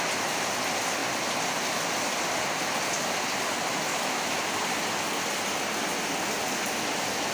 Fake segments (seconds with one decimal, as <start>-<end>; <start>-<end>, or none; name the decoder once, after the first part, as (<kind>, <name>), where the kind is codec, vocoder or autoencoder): 3.9-4.4 (autoencoder, DAC-VAE)